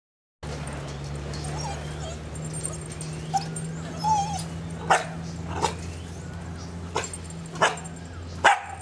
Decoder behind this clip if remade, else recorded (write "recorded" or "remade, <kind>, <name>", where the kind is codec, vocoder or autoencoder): recorded